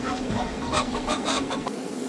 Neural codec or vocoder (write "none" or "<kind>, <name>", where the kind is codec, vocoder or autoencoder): codec, SNAC